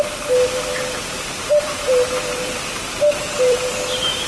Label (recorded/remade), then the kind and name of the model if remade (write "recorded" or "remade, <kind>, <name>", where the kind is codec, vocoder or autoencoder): remade, vocoder, BigVGAN v2